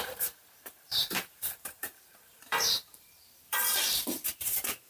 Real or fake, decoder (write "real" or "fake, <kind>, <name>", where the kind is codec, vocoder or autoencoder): fake, vocoder, BigVGAN v2